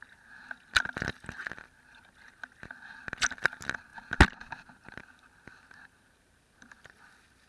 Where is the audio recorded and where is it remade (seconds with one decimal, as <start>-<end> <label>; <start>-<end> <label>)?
0.0-7.5 recorded